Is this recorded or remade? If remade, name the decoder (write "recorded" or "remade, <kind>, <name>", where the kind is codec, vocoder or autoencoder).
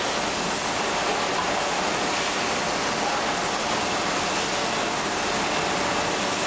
recorded